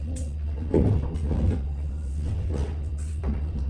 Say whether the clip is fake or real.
fake